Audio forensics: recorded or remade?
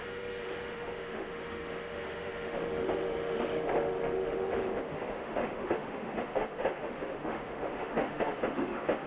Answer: remade